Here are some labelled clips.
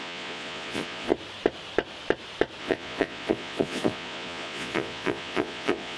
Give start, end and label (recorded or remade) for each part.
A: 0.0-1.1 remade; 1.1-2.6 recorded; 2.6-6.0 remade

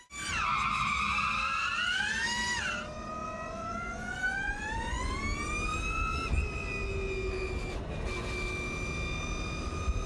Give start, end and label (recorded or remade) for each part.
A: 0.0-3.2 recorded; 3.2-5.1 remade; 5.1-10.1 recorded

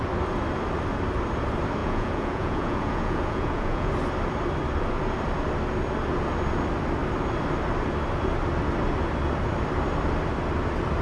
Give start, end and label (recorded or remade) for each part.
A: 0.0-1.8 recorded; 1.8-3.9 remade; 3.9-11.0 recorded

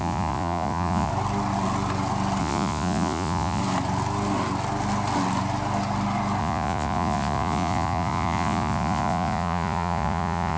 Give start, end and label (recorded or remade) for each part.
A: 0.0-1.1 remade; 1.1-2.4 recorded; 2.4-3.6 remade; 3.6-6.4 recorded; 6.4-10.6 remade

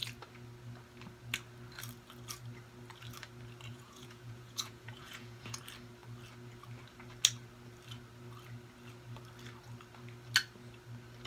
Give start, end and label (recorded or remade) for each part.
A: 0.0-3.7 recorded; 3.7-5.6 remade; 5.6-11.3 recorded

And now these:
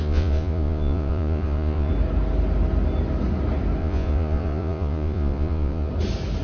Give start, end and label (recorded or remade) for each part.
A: 0.0-1.9 remade; 1.9-3.8 recorded; 3.8-5.9 remade; 5.9-6.4 recorded

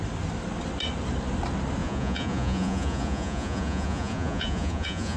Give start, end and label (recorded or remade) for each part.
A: 0.0-1.8 recorded; 1.8-5.2 remade